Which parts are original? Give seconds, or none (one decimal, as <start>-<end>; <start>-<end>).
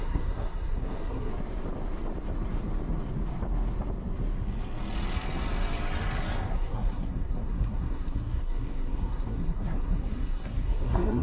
1.3-6.5